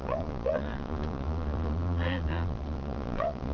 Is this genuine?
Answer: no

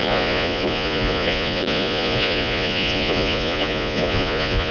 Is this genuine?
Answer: no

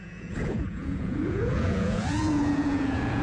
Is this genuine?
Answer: no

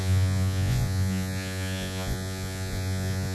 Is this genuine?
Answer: no